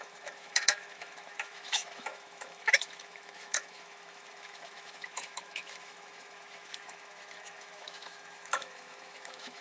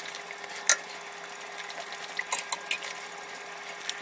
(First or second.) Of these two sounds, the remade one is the first